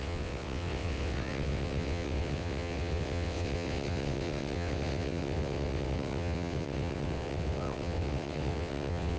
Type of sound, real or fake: fake